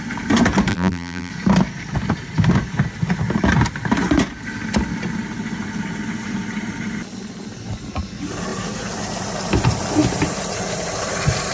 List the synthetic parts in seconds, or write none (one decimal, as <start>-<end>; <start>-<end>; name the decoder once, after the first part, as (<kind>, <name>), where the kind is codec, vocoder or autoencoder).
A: 0.7-1.3 (vocoder, BigVGAN v2)